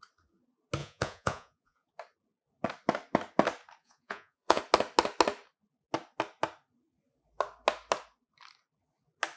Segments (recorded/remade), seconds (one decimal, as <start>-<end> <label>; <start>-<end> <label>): 0.0-0.8 recorded; 0.8-1.9 remade; 1.9-3.8 recorded; 3.8-4.6 remade; 4.6-9.4 recorded